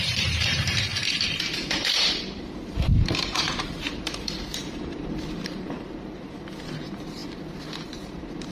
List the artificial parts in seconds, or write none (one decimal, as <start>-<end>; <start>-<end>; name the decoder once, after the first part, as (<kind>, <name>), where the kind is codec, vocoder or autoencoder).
0.0-7.2 (vocoder, BigVGAN v2); 7.9-8.5